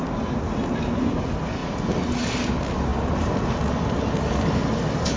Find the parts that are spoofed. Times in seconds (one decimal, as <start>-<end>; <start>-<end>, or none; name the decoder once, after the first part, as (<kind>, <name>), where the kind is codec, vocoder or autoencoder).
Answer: none

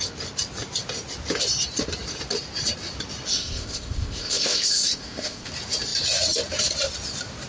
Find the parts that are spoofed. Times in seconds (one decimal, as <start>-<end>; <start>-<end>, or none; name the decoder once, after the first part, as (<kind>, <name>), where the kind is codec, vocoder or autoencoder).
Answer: 3.3-5.5 (codec, ZipCodec)

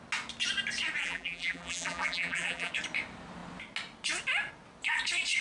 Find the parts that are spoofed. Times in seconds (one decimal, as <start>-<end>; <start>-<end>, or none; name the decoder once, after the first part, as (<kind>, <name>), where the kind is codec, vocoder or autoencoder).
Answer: 1.0-2.7 (vocoder, BigVGAN v2)

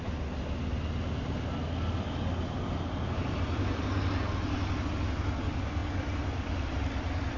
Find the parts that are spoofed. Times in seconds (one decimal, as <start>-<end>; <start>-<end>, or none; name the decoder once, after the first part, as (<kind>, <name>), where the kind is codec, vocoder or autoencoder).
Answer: none

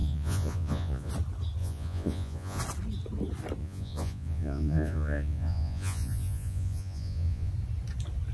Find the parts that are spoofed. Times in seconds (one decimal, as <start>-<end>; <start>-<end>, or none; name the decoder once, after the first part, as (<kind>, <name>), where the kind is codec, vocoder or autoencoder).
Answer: 0.0-1.1 (vocoder, Vocos); 1.6-2.6; 3.6-7.5

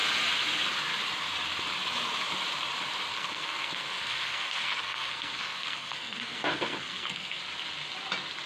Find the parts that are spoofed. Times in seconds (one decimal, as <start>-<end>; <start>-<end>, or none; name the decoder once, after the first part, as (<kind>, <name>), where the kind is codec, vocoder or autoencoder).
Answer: 3.1-7.4 (codec, SNAC)